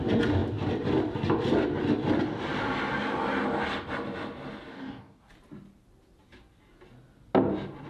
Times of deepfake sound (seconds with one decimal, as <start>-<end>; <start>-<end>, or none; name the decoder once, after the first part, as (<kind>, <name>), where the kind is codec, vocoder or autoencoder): 4.7-5.3 (codec, DAC)